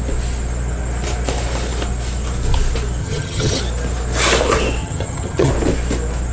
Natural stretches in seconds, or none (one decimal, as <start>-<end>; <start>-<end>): 0.0-3.0; 3.6-4.8; 5.5-6.3